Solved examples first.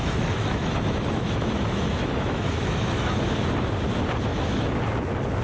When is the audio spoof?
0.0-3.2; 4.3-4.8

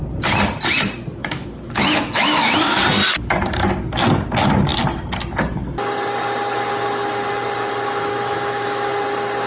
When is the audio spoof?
1.2-2.8; 8.1-8.9

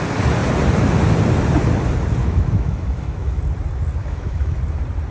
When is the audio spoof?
2.2-3.4; 4.0-4.6

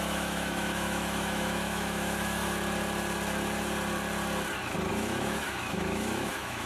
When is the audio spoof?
0.0-2.4; 4.9-6.7

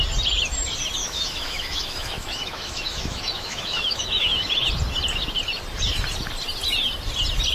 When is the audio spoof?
1.0-4.7

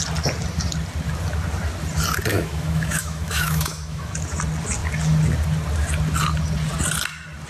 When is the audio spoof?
2.3-4.1

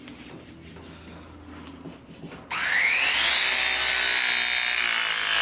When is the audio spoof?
none

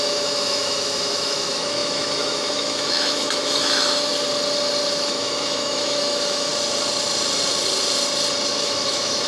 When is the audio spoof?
0.0-4.1; 4.9-6.5; 8.5-9.3